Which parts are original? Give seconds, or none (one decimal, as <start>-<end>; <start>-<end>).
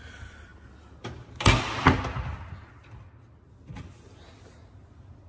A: 0.0-5.3